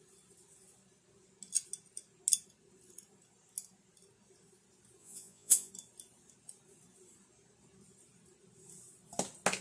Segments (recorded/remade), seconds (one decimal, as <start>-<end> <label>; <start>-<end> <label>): 0.0-5.0 recorded; 5.0-5.7 remade; 5.7-9.6 recorded